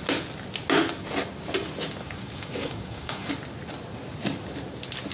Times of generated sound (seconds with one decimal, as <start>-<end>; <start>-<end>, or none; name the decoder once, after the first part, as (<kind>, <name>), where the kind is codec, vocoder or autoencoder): 2.0-3.3 (codec, DAC)